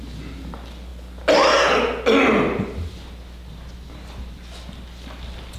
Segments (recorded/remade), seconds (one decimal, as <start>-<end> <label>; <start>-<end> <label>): 0.0-5.6 recorded